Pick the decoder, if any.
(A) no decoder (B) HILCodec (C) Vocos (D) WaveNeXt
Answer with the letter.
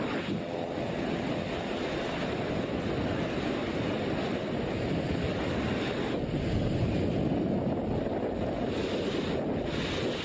A